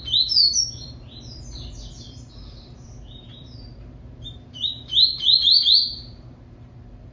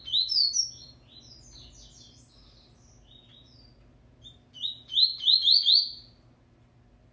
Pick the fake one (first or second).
first